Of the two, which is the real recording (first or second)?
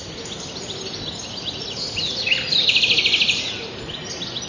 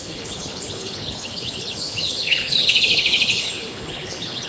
first